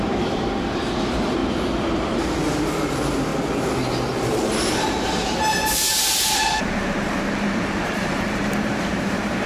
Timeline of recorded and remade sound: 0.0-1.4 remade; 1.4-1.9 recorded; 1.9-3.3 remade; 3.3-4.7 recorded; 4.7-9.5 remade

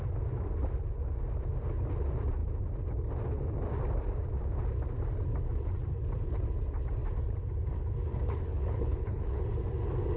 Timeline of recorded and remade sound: 0.0-8.1 recorded; 8.1-9.4 remade; 9.4-10.2 recorded

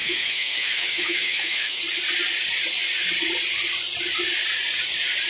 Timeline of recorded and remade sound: 0.0-1.8 remade; 1.8-5.3 recorded